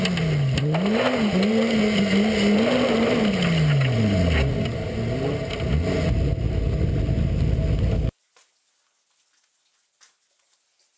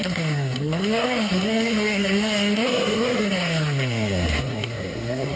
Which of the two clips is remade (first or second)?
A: second